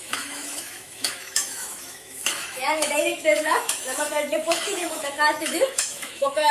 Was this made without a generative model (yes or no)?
no